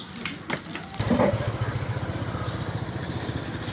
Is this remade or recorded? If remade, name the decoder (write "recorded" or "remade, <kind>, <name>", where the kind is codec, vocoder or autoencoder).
recorded